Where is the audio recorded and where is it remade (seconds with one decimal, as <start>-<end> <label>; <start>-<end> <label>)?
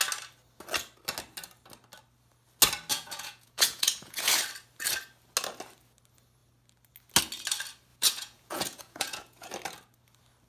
0.0-2.9 recorded; 2.9-4.3 remade; 4.3-7.9 recorded; 7.9-9.5 remade; 9.5-10.5 recorded